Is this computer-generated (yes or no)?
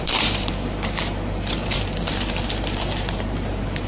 yes